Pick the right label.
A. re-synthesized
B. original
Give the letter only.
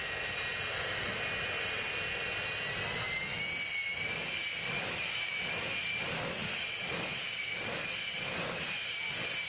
B